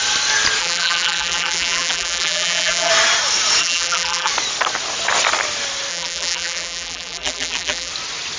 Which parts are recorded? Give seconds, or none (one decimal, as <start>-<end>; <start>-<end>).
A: 0.0-0.6; 2.9-3.6; 4.3-5.9; 7.9-8.4

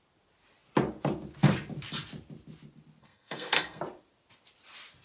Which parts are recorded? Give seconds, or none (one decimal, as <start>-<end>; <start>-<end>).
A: 0.0-3.0; 3.8-5.0

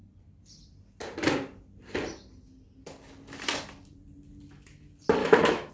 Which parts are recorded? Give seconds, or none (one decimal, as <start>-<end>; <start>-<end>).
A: 0.0-5.2